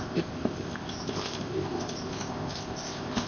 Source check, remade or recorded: remade